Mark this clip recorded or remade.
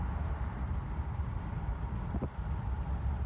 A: recorded